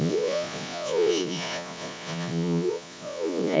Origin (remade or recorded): remade